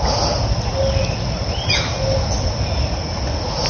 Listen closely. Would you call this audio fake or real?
real